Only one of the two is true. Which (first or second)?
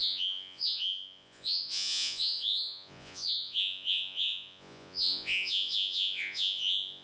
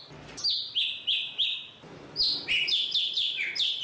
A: second